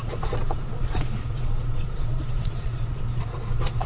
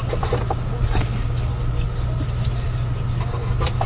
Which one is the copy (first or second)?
first